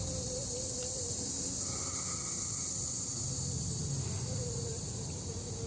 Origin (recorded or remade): recorded